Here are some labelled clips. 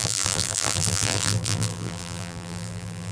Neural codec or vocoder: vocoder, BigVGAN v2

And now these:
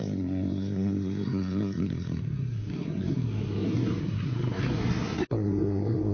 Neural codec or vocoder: codec, SNAC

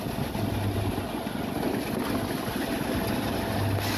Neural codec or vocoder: none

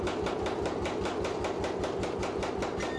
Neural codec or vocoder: none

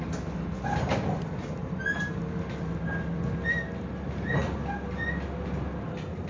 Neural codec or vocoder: none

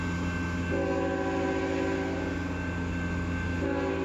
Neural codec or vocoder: none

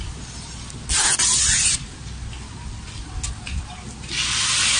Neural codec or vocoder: none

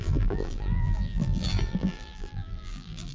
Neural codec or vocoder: vocoder, BigVGAN v2